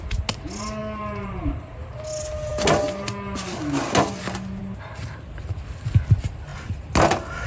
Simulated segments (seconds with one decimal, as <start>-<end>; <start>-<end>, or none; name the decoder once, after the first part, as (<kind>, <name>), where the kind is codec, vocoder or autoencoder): none